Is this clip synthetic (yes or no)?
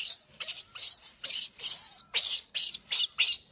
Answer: no